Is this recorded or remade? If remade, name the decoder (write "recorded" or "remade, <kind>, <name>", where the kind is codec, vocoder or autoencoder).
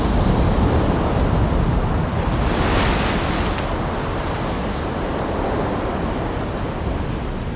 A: recorded